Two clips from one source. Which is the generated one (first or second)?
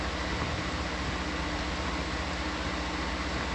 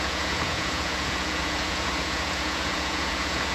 second